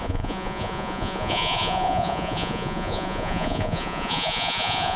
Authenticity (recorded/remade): remade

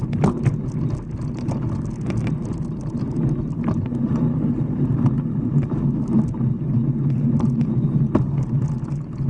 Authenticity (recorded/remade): recorded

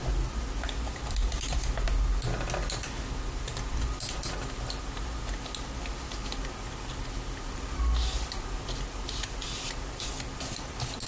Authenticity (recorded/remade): recorded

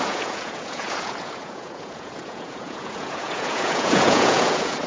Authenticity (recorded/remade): remade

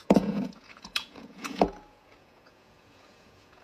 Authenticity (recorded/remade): remade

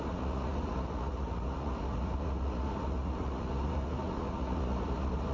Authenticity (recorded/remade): remade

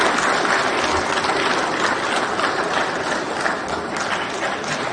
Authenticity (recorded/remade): recorded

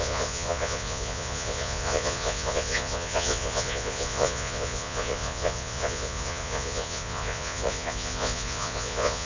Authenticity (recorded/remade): remade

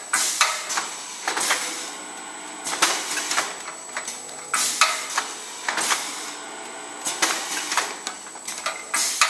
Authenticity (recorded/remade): recorded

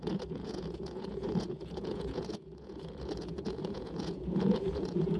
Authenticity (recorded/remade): remade